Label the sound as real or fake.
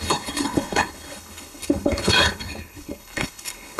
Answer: fake